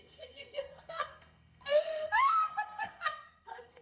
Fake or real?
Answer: fake